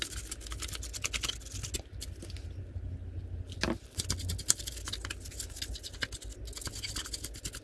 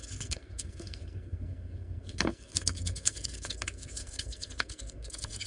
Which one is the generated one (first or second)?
second